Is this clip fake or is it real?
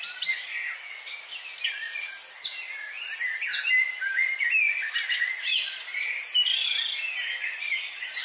real